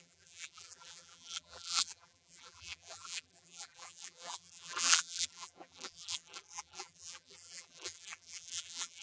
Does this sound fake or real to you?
fake